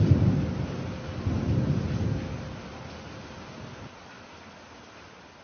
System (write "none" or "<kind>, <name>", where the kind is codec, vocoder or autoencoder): none